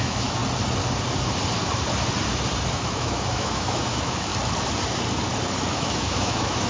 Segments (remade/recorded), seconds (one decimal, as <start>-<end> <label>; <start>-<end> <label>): 0.0-0.4 remade; 0.4-2.7 recorded; 2.7-4.3 remade; 4.3-5.7 recorded; 5.7-6.7 remade